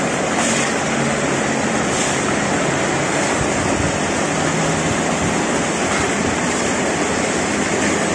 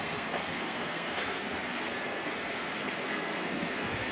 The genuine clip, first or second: first